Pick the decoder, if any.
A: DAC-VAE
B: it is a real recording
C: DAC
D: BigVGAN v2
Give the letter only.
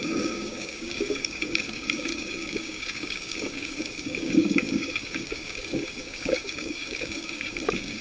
C